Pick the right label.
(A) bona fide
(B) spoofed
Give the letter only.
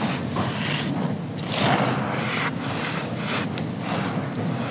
A